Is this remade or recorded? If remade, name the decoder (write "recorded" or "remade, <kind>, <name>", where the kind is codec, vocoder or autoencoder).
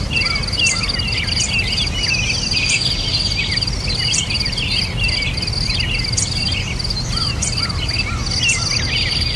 recorded